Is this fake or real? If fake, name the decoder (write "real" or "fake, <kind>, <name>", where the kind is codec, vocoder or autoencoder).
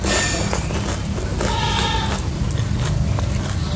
real